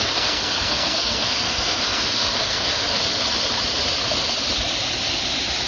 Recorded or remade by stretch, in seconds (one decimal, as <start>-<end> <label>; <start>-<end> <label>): 0.0-3.0 remade; 3.0-5.7 recorded